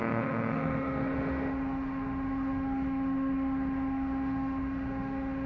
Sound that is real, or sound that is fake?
fake